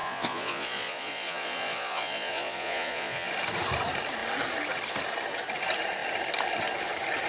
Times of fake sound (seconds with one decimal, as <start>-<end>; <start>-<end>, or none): 0.0-3.3